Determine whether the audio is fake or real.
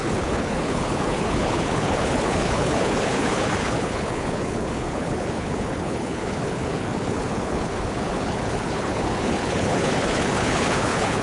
fake